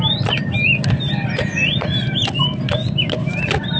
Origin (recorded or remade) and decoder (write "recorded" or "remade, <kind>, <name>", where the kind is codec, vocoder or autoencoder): recorded